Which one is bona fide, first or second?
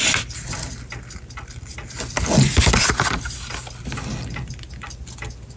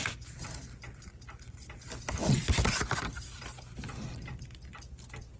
first